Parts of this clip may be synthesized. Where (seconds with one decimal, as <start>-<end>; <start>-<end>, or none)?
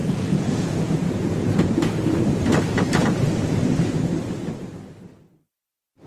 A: 0.0-1.9